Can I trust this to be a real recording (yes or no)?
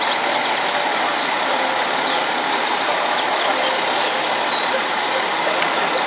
yes